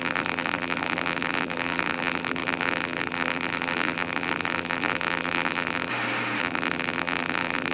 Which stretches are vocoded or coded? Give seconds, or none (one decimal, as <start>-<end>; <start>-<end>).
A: 0.0-5.9; 6.4-7.7